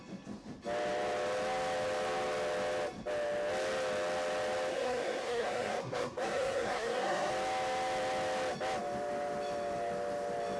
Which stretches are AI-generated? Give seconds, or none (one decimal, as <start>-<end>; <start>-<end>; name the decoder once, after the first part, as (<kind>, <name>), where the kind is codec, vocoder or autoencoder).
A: 4.7-7.3 (codec, SNAC)